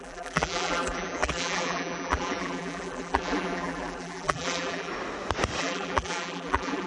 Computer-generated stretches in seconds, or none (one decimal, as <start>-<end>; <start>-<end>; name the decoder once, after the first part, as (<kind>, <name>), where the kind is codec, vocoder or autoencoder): 0.0-4.9 (vocoder, BigVGAN v2); 5.6-6.9